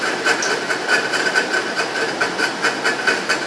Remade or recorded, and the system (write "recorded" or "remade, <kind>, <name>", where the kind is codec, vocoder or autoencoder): recorded